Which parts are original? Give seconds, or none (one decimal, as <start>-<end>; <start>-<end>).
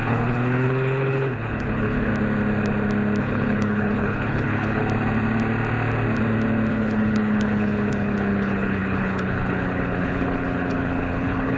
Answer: 2.1-3.2; 4.8-6.7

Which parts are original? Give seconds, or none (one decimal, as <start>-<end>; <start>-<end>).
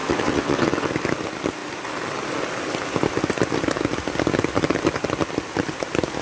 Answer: 0.9-6.2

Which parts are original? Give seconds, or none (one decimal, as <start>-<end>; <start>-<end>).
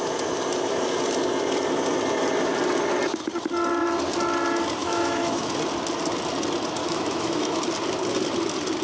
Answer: 0.0-4.8; 5.5-6.8; 7.6-8.8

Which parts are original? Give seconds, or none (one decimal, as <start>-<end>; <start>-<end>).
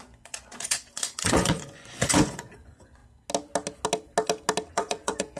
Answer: 3.0-4.7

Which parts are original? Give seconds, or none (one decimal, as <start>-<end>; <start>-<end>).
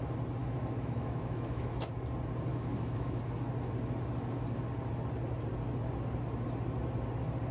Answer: 0.0-0.4; 1.9-2.5; 3.2-7.5